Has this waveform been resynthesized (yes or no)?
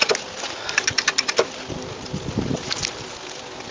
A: no